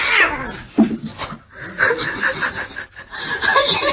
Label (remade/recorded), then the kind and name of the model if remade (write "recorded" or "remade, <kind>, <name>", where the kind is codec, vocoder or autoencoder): recorded